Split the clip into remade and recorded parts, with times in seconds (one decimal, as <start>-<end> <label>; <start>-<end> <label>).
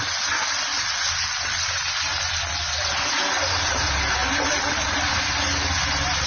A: 0.0-6.3 recorded